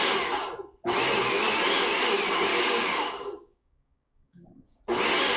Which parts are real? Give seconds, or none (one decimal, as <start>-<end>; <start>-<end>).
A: 0.0-2.5; 4.8-5.4